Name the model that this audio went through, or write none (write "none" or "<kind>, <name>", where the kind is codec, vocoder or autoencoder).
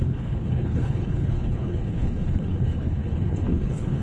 codec, HILCodec